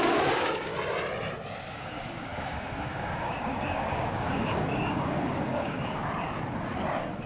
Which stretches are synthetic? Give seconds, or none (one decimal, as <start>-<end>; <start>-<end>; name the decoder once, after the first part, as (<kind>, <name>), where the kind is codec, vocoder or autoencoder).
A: 0.0-0.7 (codec, DAC); 1.7-6.0